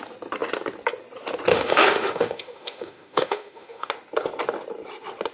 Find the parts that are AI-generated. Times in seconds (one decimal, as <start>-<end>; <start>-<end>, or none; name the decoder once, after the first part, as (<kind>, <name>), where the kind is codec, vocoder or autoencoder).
1.5-3.9 (autoencoder, DAC-VAE)